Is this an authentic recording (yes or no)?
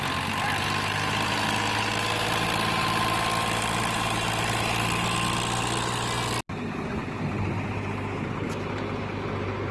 yes